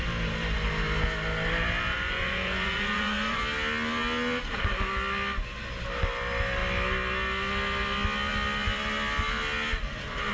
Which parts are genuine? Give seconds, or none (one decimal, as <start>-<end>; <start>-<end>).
0.0-1.9; 3.4-10.3